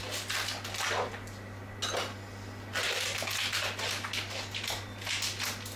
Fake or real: real